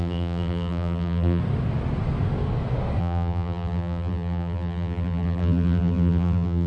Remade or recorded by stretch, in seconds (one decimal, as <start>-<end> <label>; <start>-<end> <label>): 0.0-1.4 remade; 1.4-3.0 recorded; 3.0-6.7 remade

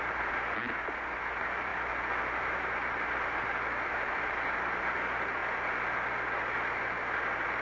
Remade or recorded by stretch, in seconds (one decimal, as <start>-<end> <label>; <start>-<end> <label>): 0.0-1.7 remade; 1.7-2.2 recorded; 2.2-5.4 remade; 5.4-7.6 recorded

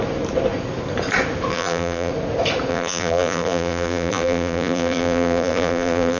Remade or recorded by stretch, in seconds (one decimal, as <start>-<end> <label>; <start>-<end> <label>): 0.0-1.5 recorded; 1.5-2.1 remade; 2.1-2.7 recorded; 2.7-6.2 remade

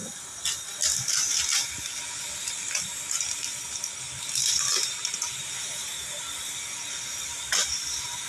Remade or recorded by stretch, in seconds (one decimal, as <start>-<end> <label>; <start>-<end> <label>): 0.0-4.4 recorded; 4.4-6.2 remade; 6.2-8.3 recorded

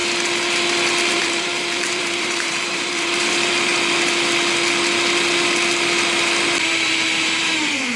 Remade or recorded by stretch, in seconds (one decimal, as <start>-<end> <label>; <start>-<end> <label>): 0.0-1.1 recorded; 1.1-3.7 remade; 3.7-6.6 recorded; 6.6-8.0 remade

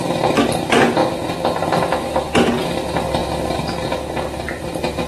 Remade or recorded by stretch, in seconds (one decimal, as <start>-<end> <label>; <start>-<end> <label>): 0.0-5.1 recorded

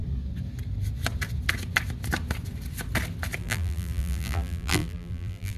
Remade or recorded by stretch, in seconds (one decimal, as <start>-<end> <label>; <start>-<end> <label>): 0.0-3.4 recorded; 3.4-5.6 remade